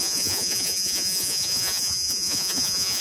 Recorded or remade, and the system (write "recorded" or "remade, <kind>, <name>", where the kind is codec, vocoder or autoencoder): remade, vocoder, Vocos